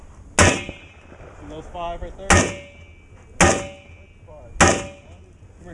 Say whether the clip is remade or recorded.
recorded